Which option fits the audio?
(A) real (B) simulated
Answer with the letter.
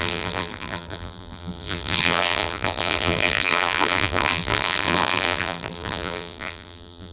B